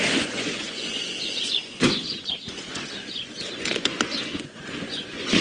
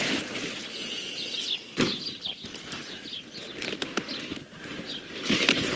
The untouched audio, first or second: second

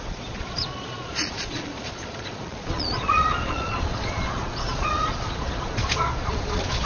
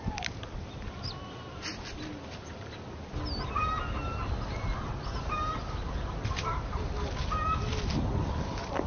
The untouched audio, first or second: second